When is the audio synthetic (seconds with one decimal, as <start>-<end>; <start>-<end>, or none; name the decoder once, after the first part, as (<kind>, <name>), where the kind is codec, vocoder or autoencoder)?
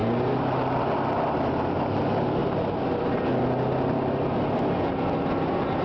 none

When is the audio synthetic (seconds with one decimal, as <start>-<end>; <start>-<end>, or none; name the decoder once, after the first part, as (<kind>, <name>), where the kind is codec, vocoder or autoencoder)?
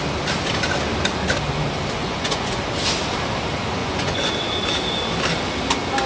2.0-2.6 (vocoder, Vocos); 3.8-4.3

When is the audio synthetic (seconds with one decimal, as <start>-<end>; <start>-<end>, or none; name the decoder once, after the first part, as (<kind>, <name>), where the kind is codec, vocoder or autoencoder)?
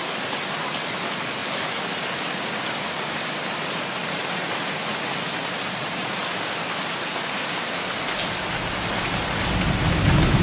5.6-6.2 (vocoder, Vocos)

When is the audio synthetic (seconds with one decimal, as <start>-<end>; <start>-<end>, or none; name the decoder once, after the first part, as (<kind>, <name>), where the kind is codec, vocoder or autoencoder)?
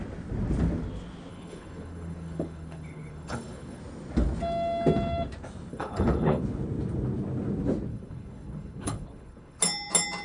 1.3-3.8 (codec, HILCodec); 5.7-6.4; 7.9-9.6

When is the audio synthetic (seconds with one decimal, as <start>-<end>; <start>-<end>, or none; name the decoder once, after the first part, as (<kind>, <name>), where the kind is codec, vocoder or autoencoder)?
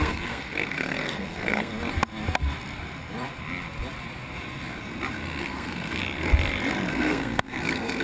0.0-1.7 (codec, SNAC); 5.4-6.0; 6.9-8.0